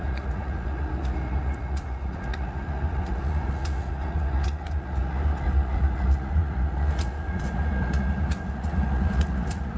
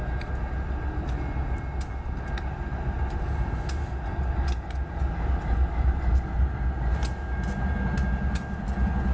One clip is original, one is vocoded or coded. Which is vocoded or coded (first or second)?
first